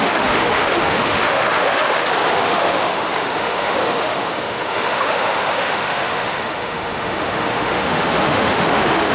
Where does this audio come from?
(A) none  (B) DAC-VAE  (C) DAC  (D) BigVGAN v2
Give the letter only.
B